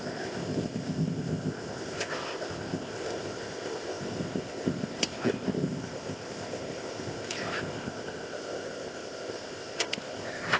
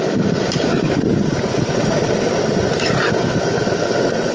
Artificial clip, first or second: first